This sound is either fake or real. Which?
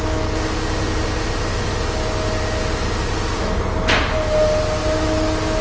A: real